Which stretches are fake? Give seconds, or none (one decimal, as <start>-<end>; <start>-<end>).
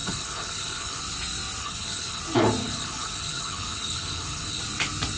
0.0-1.0; 1.6-2.2; 2.6-4.6